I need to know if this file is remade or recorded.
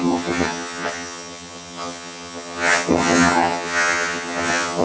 remade